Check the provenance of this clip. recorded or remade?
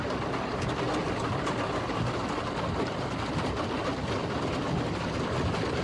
recorded